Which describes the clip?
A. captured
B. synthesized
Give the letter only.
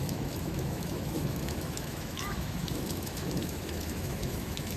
B